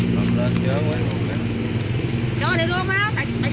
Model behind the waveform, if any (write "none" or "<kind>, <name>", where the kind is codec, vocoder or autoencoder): none